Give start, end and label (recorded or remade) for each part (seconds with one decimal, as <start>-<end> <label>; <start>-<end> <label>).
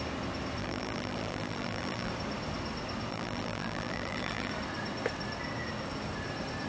0.0-0.6 recorded; 0.6-2.1 remade; 2.1-3.1 recorded; 3.1-4.5 remade; 4.5-6.7 recorded